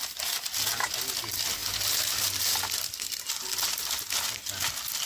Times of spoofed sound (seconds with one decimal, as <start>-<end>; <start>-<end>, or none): none